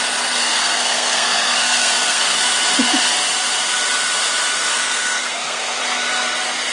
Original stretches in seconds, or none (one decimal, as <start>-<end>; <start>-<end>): 0.0-0.4; 2.4-4.7; 5.8-6.7